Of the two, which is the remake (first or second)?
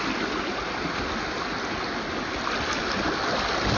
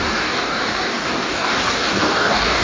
second